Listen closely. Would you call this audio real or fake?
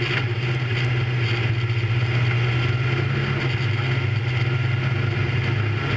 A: real